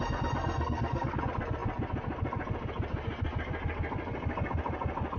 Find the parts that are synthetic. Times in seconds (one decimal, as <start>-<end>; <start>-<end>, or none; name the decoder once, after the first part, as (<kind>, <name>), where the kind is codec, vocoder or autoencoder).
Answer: 0.4-1.2 (codec, SNAC)